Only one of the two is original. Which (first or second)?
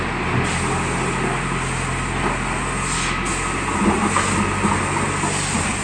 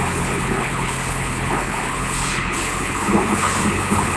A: first